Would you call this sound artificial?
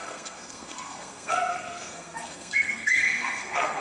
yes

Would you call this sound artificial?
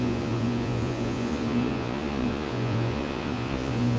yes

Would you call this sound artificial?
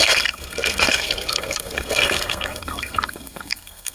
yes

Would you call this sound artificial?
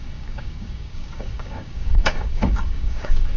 yes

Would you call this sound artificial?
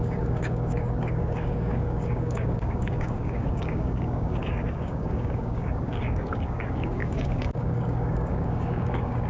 yes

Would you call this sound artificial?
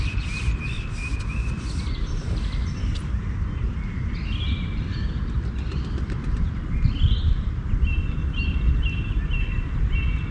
yes